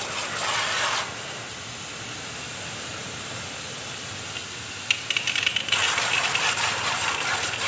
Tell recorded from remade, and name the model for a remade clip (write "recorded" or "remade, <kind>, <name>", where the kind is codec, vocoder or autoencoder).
recorded